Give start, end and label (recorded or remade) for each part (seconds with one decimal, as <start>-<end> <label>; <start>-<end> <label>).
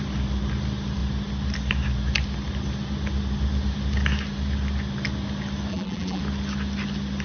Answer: 0.0-5.7 recorded; 5.7-6.2 remade; 6.2-7.2 recorded